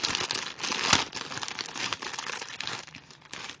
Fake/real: real